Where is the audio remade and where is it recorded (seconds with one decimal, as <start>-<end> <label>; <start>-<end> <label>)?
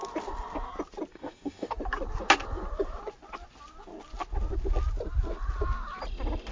0.0-1.1 recorded; 1.1-1.7 remade; 1.7-6.5 recorded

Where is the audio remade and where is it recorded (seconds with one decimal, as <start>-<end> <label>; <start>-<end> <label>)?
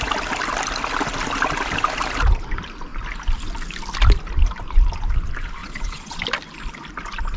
0.0-5.6 recorded; 5.6-6.2 remade; 6.2-7.4 recorded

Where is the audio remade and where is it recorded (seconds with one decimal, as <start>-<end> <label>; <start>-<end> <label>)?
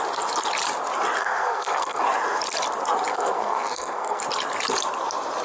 0.0-1.2 recorded; 1.2-2.0 remade; 2.0-3.1 recorded; 3.1-4.2 remade; 4.2-5.4 recorded